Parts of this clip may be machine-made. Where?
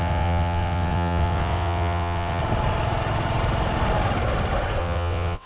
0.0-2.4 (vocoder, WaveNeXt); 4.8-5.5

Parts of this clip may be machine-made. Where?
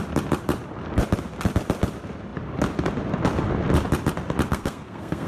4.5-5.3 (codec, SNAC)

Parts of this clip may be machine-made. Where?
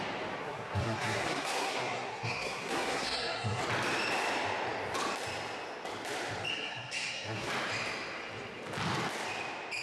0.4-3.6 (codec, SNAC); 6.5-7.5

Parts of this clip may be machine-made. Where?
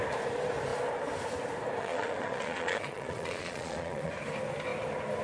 1.8-4.1 (vocoder, Vocos)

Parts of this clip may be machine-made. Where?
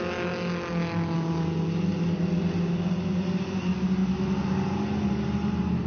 none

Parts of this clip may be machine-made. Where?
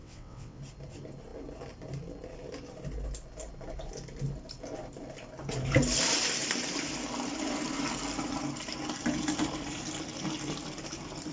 0.0-0.6 (vocoder, WaveNeXt)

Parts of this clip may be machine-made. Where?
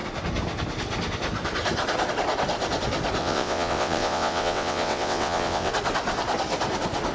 3.2-5.7 (vocoder, WaveNeXt)